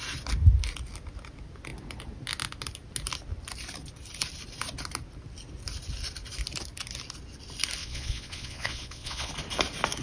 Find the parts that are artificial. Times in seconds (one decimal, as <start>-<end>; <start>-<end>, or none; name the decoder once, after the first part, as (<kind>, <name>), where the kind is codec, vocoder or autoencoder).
7.8-9.3 (vocoder, Vocos)